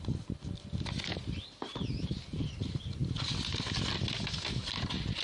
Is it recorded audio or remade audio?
recorded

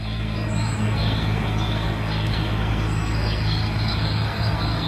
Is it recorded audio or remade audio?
remade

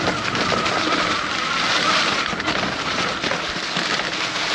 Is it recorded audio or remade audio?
recorded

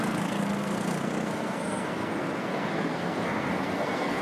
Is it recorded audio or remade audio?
remade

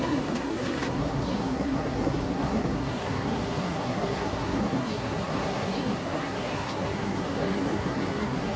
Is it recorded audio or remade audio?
remade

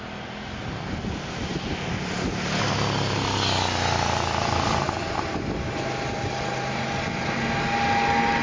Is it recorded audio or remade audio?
recorded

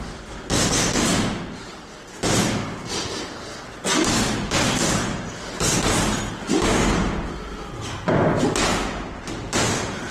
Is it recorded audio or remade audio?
recorded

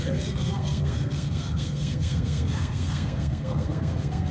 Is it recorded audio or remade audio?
remade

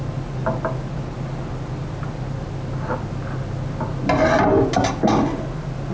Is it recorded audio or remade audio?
recorded